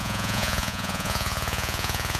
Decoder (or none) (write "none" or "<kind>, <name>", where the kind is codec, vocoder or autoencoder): vocoder, Vocos